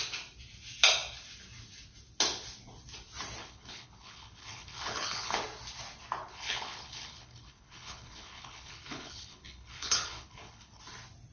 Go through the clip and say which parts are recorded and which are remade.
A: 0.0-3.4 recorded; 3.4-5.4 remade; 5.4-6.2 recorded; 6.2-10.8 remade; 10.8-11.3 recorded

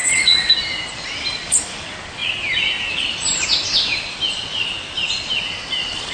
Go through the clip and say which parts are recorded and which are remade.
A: 0.0-0.5 remade; 0.5-6.1 recorded

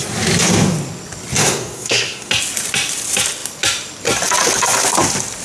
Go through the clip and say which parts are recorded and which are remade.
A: 0.0-1.4 recorded; 1.4-2.3 remade; 2.3-5.4 recorded

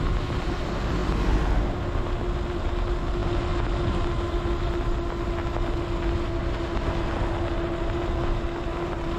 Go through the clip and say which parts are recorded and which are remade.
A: 0.0-9.2 recorded

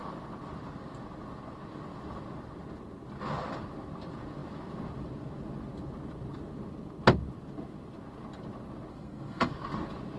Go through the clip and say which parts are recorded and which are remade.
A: 0.0-8.9 recorded; 8.9-9.5 remade; 9.5-10.2 recorded

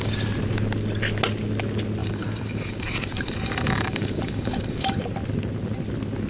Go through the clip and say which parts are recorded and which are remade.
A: 0.0-2.0 recorded; 2.0-5.0 remade; 5.0-6.3 recorded